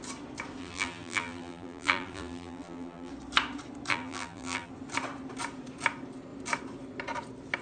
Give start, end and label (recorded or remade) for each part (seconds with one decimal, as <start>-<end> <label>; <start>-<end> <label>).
0.0-0.6 recorded; 0.6-3.1 remade; 3.1-3.9 recorded; 3.9-4.7 remade; 4.7-7.6 recorded